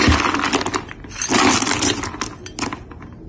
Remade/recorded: recorded